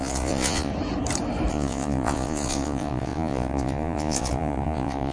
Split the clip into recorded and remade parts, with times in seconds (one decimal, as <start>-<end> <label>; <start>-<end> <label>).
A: 0.0-0.7 remade; 0.7-1.5 recorded; 1.5-5.1 remade